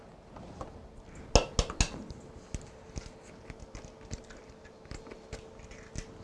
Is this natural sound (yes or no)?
yes